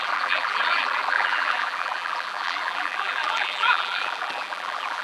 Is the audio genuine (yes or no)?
no